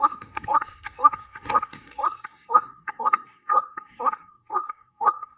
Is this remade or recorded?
remade